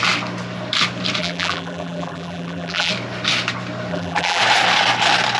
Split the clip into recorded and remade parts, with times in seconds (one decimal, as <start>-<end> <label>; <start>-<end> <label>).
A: 0.0-1.2 recorded; 1.2-2.9 remade; 2.9-3.9 recorded; 3.9-4.4 remade; 4.4-5.4 recorded